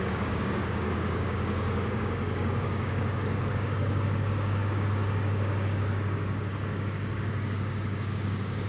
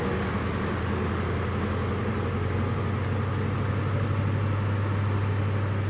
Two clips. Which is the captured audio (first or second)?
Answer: second